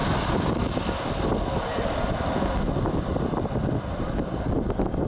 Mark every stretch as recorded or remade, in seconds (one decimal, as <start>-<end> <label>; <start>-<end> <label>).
0.0-5.1 recorded